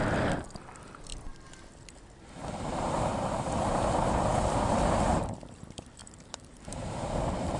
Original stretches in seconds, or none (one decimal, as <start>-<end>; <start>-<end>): 0.0-6.0; 6.9-7.6